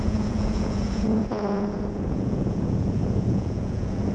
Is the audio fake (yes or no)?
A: yes